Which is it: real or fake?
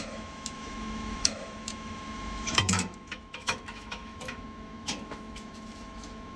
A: fake